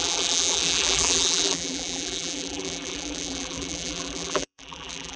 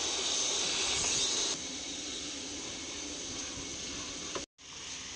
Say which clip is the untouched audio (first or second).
second